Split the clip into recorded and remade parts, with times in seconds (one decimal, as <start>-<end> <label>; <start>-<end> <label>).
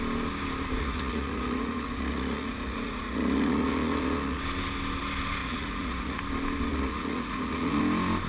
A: 0.0-0.8 recorded; 0.8-4.4 remade; 4.4-5.4 recorded; 5.4-6.2 remade; 6.2-6.7 recorded; 6.7-7.8 remade; 7.8-8.3 recorded